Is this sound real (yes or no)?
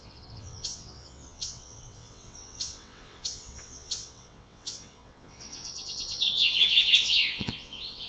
no